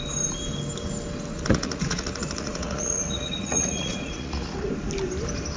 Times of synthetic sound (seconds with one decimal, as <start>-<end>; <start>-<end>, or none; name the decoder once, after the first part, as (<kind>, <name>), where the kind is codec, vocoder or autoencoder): 1.3-4.7 (vocoder, Vocos)